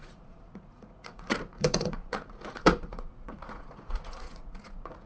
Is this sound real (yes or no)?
no